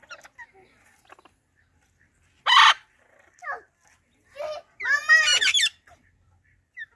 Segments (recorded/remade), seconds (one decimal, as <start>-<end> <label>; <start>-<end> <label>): 0.0-5.3 recorded; 5.3-6.1 remade; 6.1-7.0 recorded